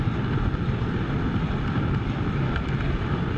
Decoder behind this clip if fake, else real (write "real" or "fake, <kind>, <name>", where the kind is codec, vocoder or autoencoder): real